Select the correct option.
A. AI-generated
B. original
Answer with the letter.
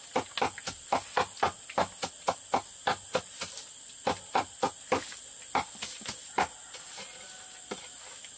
B